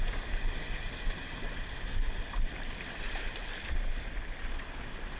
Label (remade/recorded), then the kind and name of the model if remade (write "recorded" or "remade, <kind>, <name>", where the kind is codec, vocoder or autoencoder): recorded